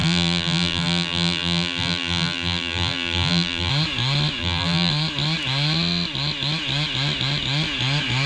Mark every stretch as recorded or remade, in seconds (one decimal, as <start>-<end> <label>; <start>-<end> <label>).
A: 0.0-3.7 remade; 3.7-4.4 recorded; 4.4-4.9 remade; 4.9-8.3 recorded